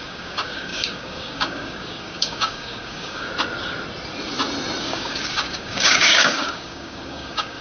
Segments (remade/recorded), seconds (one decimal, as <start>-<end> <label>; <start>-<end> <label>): 0.0-3.3 remade; 3.3-4.8 recorded; 4.8-7.6 remade